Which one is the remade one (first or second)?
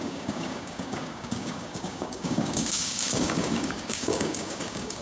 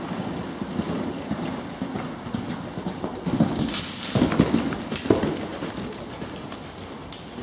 first